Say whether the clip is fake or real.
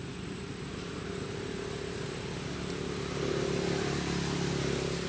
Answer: real